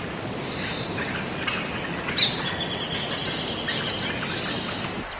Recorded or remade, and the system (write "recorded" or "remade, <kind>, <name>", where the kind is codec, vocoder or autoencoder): recorded